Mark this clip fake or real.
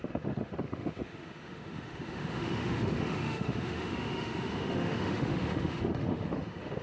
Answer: fake